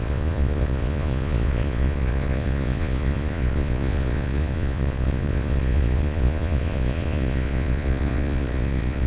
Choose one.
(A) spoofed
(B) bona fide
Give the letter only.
A